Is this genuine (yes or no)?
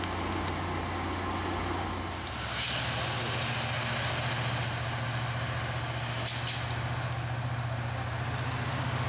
yes